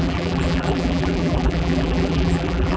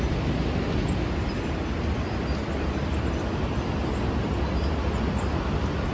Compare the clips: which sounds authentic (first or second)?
second